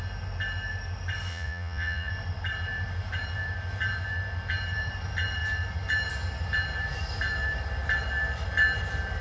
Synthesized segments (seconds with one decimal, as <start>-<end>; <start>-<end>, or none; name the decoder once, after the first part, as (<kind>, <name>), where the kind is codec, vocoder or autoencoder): 1.3-2.1 (vocoder, Vocos)